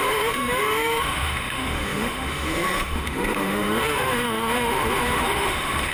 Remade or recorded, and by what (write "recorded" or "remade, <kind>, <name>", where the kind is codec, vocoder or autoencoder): remade, autoencoder, DAC-VAE